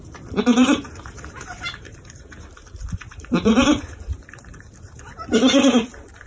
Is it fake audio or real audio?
fake